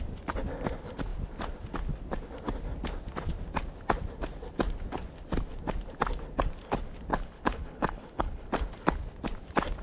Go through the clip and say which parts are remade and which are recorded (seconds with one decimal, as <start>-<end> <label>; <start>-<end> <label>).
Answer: 0.0-7.1 recorded; 7.1-8.5 remade; 8.5-9.8 recorded